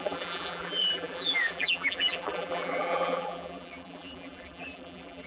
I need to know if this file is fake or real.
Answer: fake